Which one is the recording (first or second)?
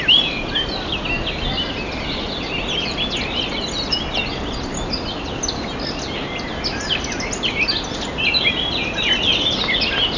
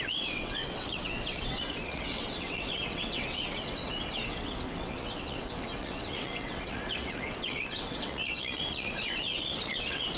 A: first